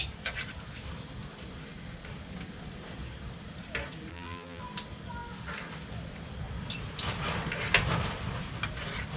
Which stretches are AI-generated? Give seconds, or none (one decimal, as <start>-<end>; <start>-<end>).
4.1-4.6